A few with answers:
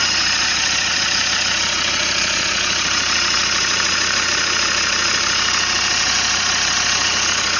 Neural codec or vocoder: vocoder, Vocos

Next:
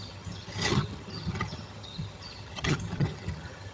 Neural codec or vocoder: vocoder, HiFi-GAN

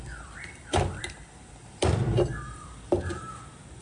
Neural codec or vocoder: vocoder, BigVGAN v2